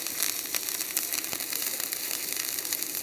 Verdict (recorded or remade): remade